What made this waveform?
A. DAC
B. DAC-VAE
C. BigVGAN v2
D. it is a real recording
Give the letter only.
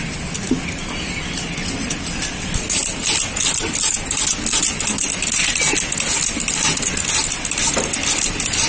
D